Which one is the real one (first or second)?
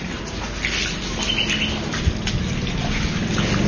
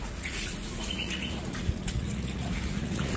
first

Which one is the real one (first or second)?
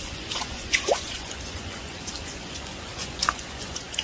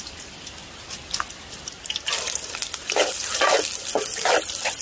second